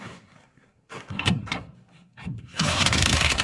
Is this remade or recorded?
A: remade